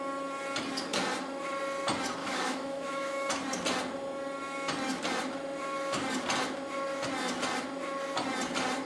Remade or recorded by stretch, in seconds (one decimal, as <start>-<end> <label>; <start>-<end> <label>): 0.0-2.2 recorded; 2.2-3.3 remade; 3.3-8.8 recorded